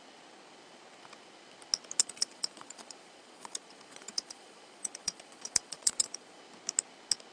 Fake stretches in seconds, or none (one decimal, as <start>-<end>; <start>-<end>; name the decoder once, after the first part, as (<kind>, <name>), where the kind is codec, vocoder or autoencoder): 2.0-6.4 (vocoder, Vocos)